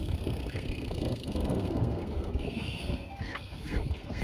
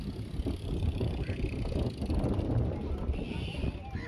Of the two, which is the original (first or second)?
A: second